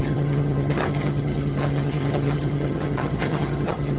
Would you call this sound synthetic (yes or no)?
yes